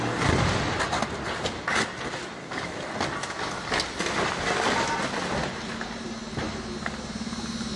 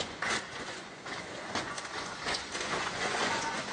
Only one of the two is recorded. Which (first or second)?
first